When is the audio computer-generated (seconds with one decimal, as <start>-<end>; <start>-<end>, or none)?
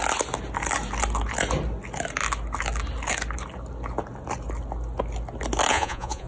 5.7-6.3